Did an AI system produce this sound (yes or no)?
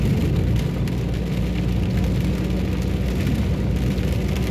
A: no